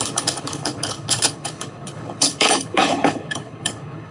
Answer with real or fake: fake